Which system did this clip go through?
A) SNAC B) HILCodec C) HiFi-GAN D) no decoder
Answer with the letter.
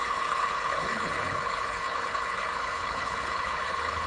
B